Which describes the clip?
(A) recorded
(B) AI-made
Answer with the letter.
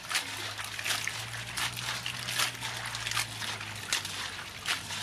A